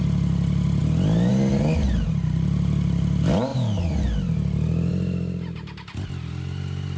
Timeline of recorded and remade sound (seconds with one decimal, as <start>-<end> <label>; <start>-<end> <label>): 0.0-7.0 recorded